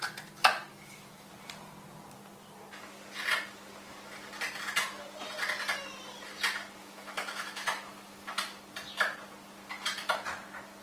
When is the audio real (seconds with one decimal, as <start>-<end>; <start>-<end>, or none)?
0.0-0.7; 1.3-6.8; 8.3-10.8